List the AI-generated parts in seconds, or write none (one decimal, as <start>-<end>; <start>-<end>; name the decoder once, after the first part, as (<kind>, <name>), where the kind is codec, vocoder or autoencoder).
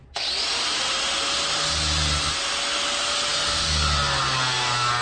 none